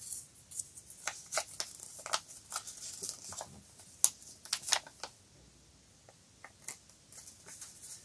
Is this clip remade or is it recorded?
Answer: recorded